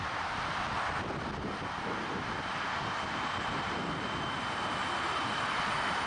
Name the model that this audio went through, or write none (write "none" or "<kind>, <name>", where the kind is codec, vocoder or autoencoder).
none